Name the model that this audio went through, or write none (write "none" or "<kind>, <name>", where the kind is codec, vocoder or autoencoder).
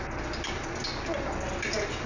none